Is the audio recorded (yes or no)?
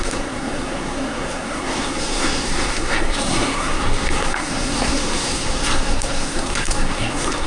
no